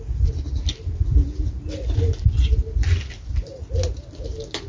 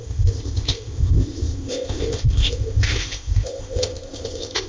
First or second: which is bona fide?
first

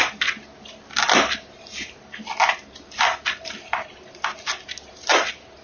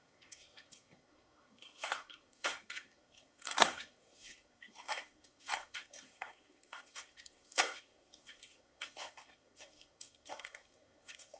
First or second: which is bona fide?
first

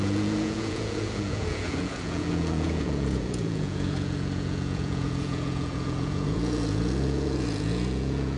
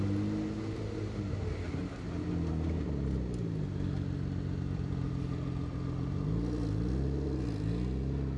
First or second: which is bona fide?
second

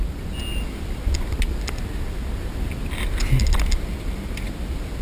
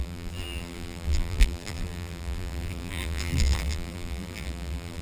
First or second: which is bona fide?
first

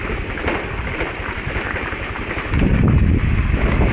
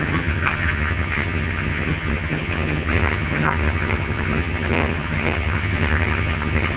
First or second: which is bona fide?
first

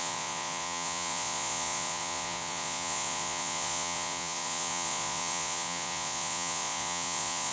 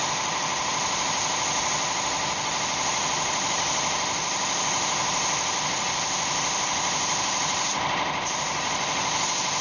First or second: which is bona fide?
second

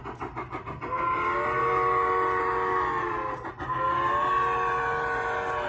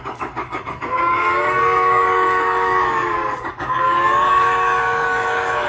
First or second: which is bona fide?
first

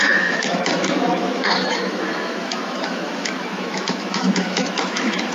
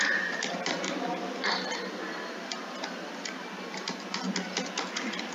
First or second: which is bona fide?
second